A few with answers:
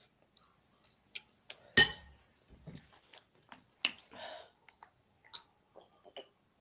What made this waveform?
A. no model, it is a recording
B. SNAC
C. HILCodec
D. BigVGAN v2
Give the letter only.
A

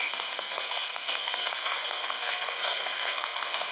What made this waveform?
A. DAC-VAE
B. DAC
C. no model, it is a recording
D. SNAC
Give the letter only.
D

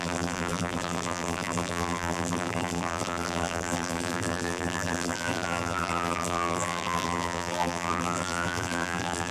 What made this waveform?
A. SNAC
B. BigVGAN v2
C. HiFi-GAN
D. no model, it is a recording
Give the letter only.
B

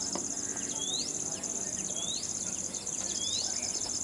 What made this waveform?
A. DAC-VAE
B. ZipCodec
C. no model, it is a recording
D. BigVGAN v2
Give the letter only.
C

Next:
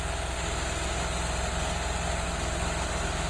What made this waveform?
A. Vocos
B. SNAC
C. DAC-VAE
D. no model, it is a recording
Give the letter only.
D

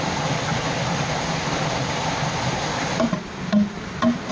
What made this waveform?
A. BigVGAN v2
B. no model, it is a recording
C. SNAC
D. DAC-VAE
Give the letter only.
B